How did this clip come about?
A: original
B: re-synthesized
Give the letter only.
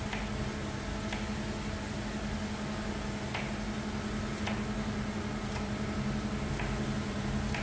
A